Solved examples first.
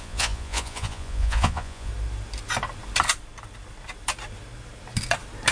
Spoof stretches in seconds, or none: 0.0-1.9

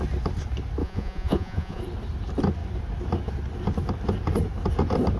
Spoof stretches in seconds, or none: 0.8-1.8

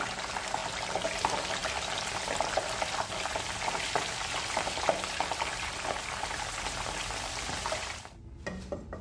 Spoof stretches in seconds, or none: none

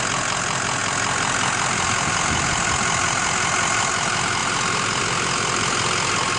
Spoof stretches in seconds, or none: none

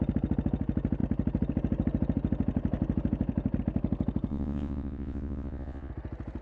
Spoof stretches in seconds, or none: 4.3-5.9